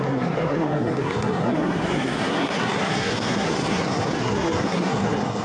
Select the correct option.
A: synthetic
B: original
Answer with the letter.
A